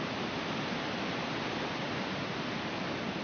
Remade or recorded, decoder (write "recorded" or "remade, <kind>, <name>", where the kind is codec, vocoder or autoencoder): recorded